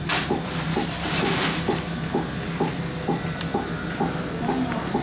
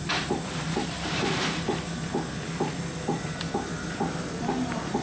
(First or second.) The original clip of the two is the first